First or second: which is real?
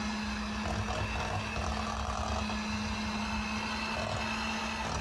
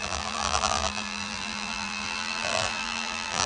first